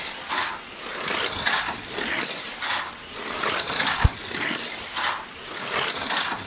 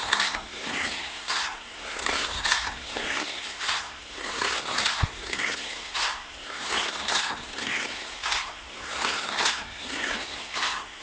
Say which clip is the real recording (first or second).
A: first